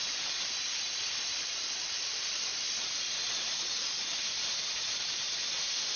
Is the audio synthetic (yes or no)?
no